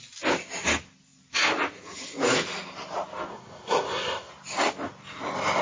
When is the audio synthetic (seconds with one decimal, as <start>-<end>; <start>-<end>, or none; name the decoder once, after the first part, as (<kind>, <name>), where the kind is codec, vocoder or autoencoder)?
3.3-4.3 (codec, SNAC)